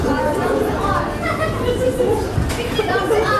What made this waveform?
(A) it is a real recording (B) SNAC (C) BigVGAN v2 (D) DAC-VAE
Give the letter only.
A